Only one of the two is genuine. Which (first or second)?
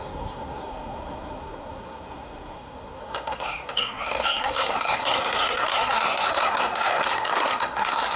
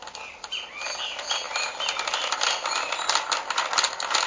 second